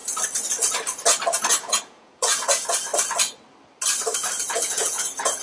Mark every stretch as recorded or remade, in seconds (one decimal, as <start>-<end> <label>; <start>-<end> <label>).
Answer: 0.0-1.5 recorded; 1.5-2.9 remade; 2.9-4.5 recorded; 4.5-5.4 remade